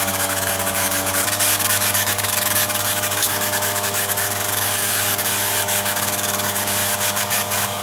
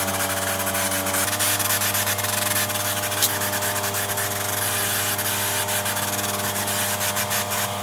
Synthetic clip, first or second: first